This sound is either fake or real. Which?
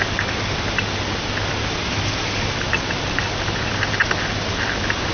real